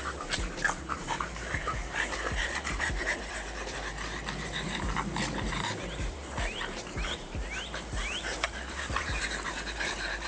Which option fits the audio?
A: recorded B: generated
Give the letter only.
B